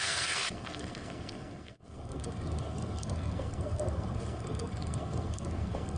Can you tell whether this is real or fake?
fake